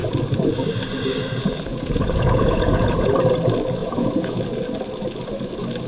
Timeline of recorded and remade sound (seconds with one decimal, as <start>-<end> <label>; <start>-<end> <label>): 0.0-1.7 recorded; 1.7-3.1 remade; 3.1-3.8 recorded; 3.8-4.4 remade; 4.4-5.9 recorded